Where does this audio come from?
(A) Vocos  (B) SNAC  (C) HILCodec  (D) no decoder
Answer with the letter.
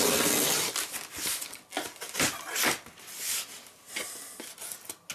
D